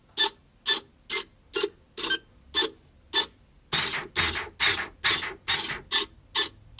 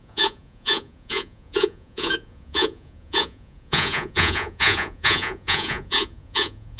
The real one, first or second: first